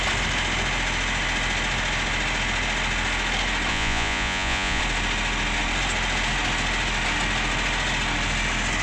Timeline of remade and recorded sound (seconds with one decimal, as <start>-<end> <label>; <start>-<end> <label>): 0.0-3.7 recorded; 3.7-4.8 remade; 4.8-8.8 recorded